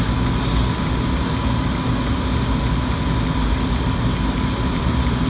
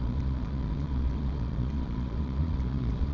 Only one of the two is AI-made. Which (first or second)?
second